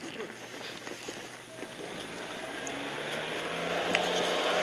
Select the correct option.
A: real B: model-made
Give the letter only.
A